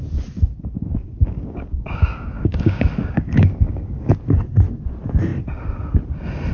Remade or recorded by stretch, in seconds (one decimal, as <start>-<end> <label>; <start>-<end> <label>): 0.0-1.2 recorded; 1.2-4.1 remade; 4.1-6.5 recorded